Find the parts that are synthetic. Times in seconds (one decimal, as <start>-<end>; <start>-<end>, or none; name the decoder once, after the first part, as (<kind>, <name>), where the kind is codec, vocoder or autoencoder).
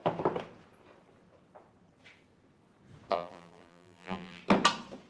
3.1-4.4 (vocoder, BigVGAN v2)